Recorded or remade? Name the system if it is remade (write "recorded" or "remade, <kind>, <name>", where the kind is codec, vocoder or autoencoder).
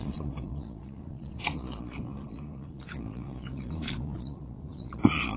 remade, vocoder, Vocos